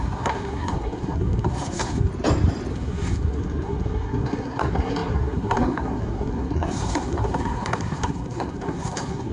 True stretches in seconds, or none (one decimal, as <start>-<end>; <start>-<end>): 2.1-2.7